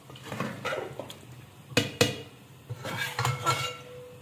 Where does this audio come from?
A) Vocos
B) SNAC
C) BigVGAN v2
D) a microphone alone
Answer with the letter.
D